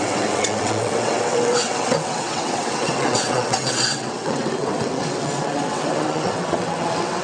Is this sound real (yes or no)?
no